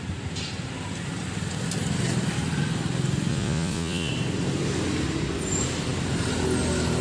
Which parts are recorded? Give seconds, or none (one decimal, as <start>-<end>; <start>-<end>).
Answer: 0.0-3.3; 4.1-7.0